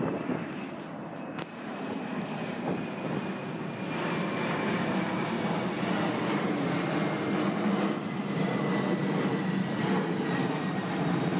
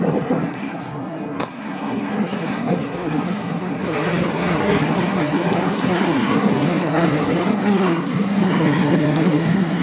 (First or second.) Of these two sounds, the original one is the first